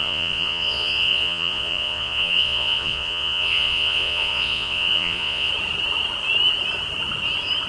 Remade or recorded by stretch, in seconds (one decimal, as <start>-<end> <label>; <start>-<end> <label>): 0.0-5.5 remade; 5.5-7.7 recorded